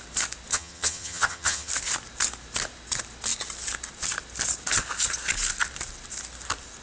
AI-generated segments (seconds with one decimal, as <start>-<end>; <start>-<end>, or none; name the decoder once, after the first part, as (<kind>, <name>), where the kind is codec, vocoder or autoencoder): 0.5-1.7 (vocoder, HiFi-GAN)